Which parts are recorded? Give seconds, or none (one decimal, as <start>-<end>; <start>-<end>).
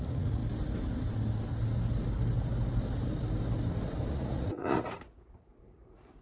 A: 0.4-4.1